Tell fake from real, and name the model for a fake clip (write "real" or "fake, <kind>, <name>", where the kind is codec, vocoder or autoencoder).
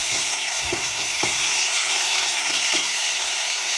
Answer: fake, codec, SNAC